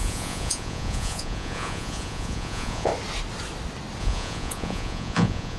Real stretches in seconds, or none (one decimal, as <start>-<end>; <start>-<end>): 2.9-4.0